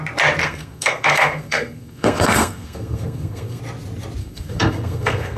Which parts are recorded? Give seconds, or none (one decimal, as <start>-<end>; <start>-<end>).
0.0-0.4; 3.6-4.2